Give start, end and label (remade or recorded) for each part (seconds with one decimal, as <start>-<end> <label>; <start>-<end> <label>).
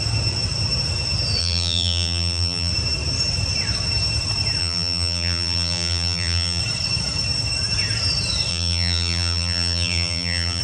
0.0-1.4 recorded; 1.4-2.7 remade; 2.7-4.6 recorded; 4.6-6.6 remade; 6.6-8.5 recorded; 8.5-10.6 remade